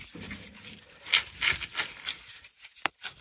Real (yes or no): yes